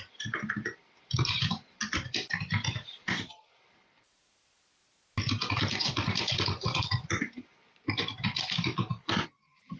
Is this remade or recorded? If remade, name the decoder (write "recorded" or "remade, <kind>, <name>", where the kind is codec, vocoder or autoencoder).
remade, vocoder, BigVGAN v2